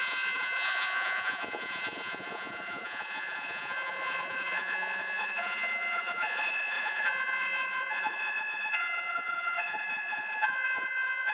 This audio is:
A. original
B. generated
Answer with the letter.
B